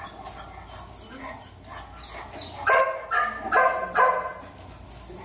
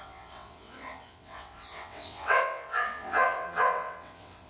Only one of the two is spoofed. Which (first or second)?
second